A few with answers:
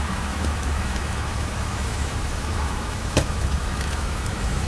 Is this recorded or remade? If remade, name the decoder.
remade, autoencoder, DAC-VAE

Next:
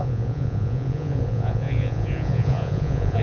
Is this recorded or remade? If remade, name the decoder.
remade, vocoder, Vocos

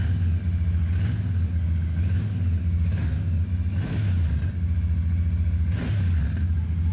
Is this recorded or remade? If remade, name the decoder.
recorded